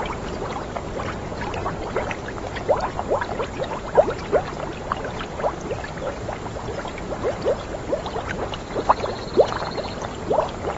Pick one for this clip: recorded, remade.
recorded